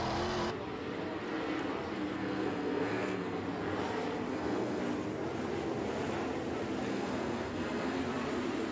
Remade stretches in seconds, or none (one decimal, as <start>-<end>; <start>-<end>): 2.2-3.4; 4.3-4.8; 6.9-8.0